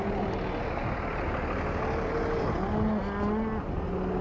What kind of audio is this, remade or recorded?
recorded